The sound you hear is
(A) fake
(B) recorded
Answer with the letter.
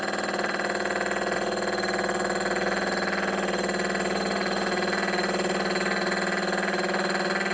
B